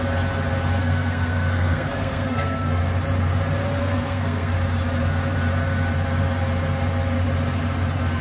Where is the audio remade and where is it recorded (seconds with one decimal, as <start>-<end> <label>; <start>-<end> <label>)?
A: 0.0-0.8 recorded; 0.8-2.8 remade; 2.8-3.8 recorded; 3.8-4.5 remade; 4.5-8.2 recorded